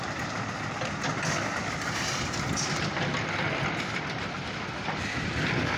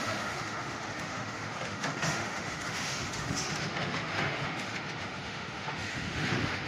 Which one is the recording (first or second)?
first